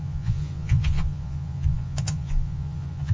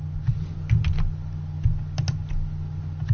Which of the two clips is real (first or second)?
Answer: second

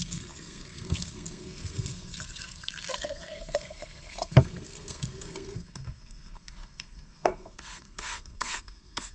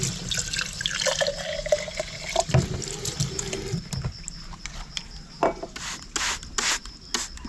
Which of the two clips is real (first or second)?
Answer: second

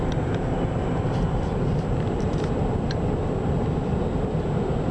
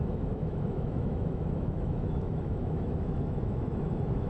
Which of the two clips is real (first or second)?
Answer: first